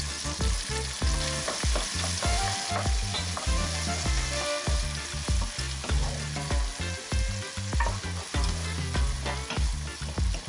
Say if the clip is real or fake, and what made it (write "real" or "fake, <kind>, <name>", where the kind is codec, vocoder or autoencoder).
real